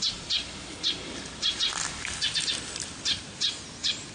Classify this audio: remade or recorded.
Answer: recorded